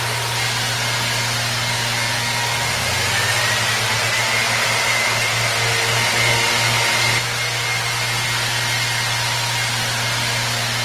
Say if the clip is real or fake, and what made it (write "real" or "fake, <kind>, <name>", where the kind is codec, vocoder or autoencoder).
real